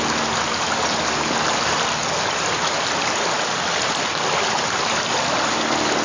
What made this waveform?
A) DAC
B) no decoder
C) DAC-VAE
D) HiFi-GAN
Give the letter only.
B